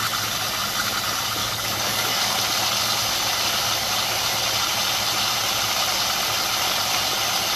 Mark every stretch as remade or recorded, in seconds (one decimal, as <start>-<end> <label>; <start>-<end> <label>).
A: 0.0-1.4 recorded; 1.4-2.4 remade; 2.4-7.6 recorded